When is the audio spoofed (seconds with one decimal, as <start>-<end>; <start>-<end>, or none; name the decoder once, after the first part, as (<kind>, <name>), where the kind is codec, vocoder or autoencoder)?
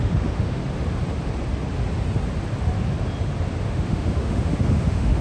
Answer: 0.0-0.6 (autoencoder, DAC-VAE); 3.6-5.2